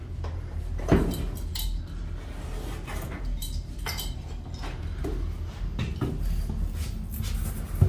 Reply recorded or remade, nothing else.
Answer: recorded